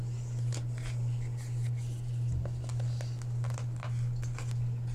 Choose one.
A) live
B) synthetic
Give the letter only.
A